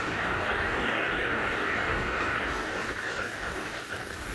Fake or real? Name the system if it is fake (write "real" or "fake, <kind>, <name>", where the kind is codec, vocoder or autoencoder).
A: fake, codec, DAC